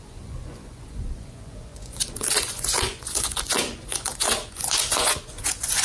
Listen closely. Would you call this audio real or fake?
fake